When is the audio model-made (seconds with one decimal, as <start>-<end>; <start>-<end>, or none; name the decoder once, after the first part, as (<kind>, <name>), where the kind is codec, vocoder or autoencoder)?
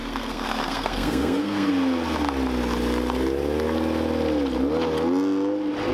0.0-1.7 (codec, SNAC)